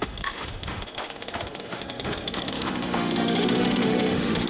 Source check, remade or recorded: remade